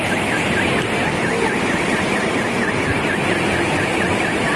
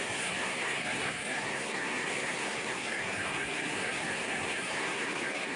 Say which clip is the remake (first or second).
second